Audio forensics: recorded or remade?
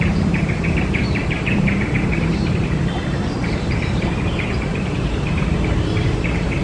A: remade